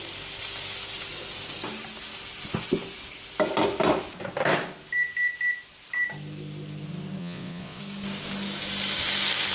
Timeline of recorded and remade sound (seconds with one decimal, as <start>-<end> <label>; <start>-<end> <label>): 0.0-7.2 recorded; 7.2-7.8 remade; 7.8-9.5 recorded